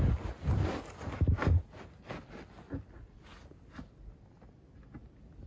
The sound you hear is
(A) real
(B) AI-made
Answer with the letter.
A